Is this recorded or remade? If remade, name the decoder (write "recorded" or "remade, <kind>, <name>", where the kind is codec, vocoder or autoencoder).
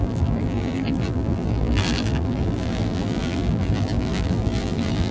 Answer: remade, vocoder, BigVGAN v2